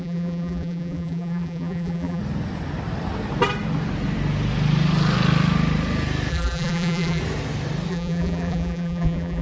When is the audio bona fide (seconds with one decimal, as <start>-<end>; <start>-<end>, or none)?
2.2-6.3; 7.2-7.9

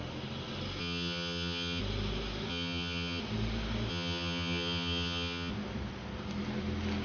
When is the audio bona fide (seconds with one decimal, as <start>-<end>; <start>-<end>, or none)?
0.0-0.8; 1.8-2.5; 3.2-3.9; 5.5-7.0

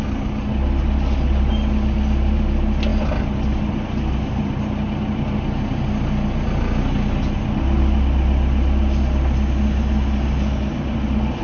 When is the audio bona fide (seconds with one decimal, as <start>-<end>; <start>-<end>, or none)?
0.0-11.4